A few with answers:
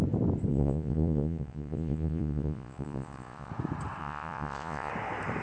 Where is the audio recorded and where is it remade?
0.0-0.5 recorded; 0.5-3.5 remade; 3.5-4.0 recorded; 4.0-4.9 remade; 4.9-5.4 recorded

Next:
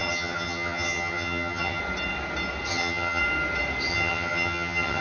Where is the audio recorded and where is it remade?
0.0-1.8 remade; 1.8-2.7 recorded; 2.7-3.2 remade; 3.2-3.9 recorded; 3.9-5.0 remade

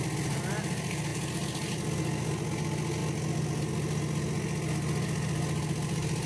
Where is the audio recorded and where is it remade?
0.0-6.3 recorded

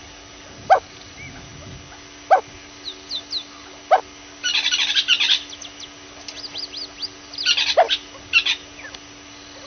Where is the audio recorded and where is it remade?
0.0-9.7 recorded

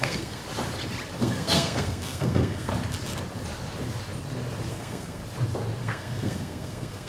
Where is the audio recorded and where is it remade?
0.0-0.4 remade; 0.4-1.2 recorded; 1.2-2.7 remade; 2.7-4.7 recorded; 4.7-5.2 remade; 5.2-5.8 recorded; 5.8-7.1 remade

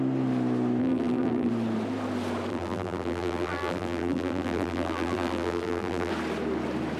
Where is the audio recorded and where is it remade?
0.0-0.8 recorded; 0.8-1.5 remade; 1.5-2.5 recorded; 2.5-6.1 remade; 6.1-7.0 recorded

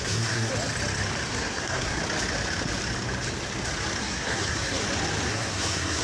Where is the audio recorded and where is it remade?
0.0-0.5 remade; 0.5-1.3 recorded; 1.3-2.0 remade; 2.0-4.0 recorded; 4.0-4.8 remade; 4.8-5.3 recorded; 5.3-6.0 remade